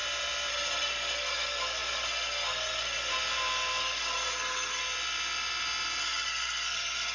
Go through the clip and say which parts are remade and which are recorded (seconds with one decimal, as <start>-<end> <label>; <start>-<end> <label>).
0.0-0.5 recorded; 0.5-3.1 remade; 3.1-3.8 recorded; 3.8-4.8 remade; 4.8-6.0 recorded; 6.0-7.1 remade